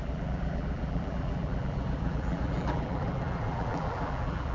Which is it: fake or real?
fake